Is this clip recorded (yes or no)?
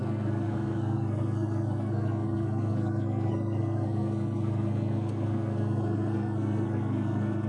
no